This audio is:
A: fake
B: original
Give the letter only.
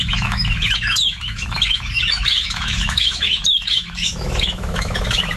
A